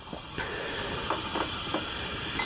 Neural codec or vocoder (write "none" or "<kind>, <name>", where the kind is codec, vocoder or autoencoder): none